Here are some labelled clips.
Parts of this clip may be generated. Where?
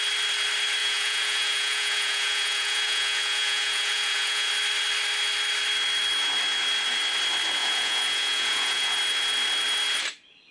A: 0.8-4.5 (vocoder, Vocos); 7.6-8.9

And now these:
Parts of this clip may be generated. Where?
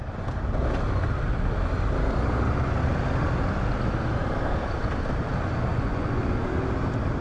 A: 5.7-6.2 (vocoder, Vocos)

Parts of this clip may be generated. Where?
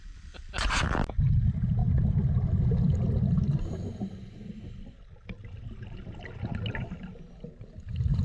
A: none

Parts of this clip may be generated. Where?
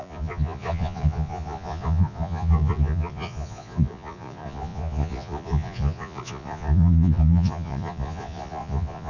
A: 0.0-9.1 (vocoder, Vocos)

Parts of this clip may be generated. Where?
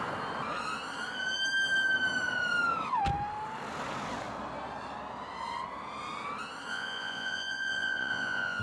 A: 6.7-8.6 (vocoder, Vocos)